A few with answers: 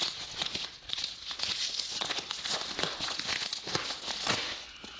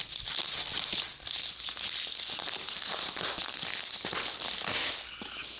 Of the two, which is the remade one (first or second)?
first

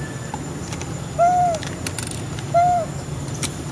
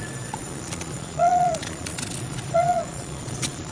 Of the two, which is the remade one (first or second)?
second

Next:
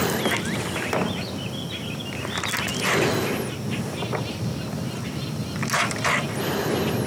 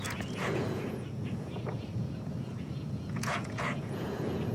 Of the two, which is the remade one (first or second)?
second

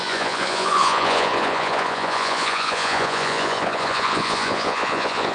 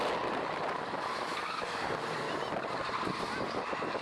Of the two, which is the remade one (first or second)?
first